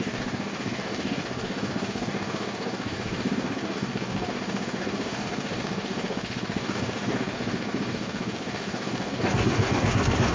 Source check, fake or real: fake